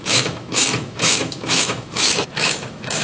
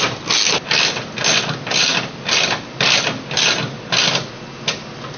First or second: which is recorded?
second